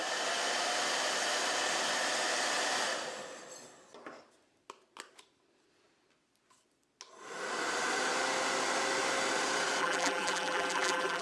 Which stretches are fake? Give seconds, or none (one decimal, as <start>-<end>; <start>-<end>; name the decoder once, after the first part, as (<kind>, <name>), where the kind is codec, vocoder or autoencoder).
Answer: 9.8-11.2 (vocoder, BigVGAN v2)